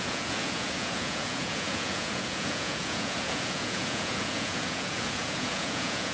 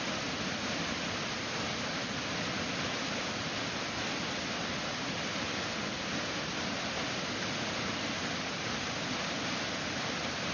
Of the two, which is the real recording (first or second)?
second